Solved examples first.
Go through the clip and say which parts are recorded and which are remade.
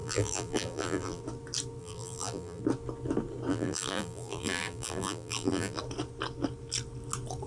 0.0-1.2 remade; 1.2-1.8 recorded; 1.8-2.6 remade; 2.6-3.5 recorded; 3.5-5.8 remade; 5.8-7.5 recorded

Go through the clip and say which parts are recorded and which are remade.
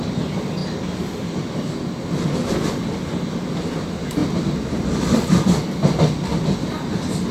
0.0-7.3 recorded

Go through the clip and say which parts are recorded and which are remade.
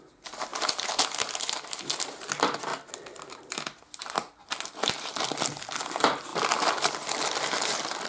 0.0-0.5 remade; 0.5-2.0 recorded; 2.0-8.1 remade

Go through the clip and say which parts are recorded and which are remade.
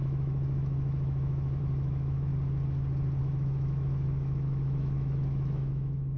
0.0-2.3 remade; 2.3-3.2 recorded; 3.2-6.2 remade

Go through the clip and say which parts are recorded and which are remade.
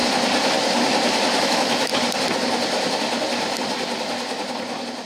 0.0-1.4 recorded; 1.4-1.9 remade; 1.9-5.1 recorded